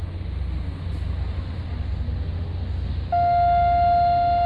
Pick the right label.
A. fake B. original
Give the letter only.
B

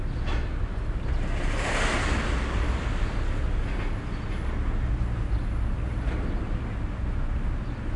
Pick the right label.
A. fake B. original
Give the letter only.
B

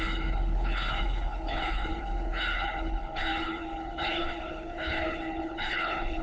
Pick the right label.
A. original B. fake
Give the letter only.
B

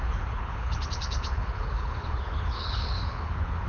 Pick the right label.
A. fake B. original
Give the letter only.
A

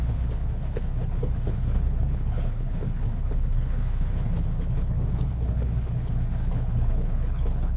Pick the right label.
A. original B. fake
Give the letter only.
B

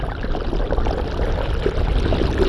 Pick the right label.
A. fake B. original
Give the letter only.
B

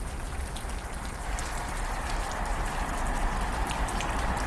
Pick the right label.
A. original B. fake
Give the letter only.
A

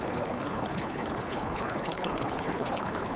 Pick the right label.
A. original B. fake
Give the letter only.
B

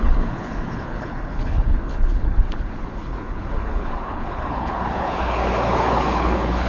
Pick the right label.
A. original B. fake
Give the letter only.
B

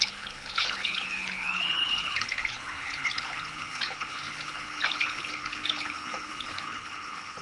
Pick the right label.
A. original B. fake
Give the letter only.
B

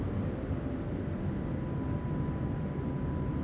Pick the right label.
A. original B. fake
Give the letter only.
A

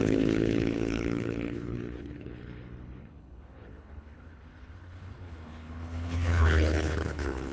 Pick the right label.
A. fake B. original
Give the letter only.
A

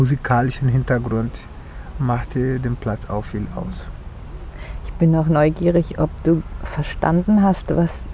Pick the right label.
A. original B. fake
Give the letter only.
A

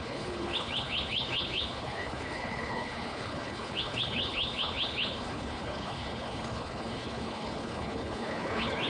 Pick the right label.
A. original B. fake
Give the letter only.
B